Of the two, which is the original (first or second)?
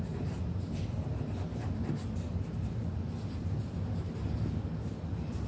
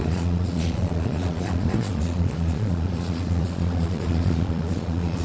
first